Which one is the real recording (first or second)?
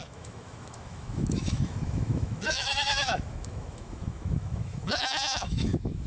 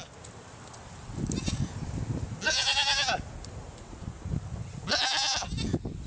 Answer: second